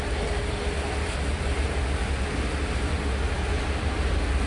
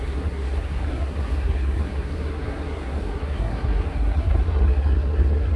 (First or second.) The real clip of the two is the first